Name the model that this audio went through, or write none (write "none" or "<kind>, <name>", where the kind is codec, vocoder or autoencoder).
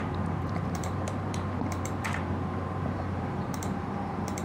vocoder, BigVGAN v2